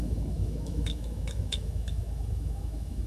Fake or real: fake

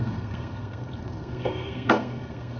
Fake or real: fake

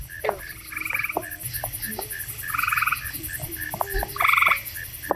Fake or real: real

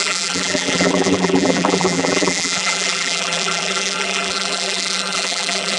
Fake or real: fake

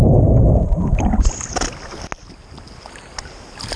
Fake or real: real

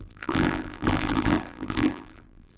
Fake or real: fake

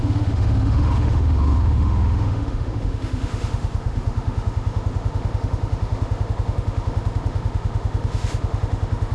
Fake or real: fake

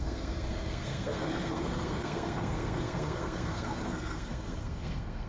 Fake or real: fake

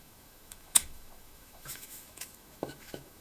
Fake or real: fake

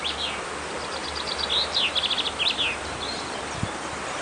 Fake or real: real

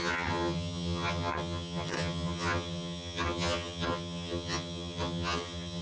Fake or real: fake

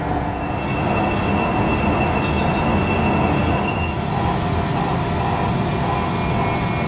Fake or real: real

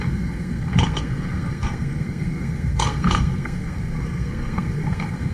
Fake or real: fake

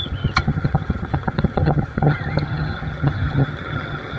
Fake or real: fake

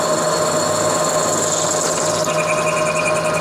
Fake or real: real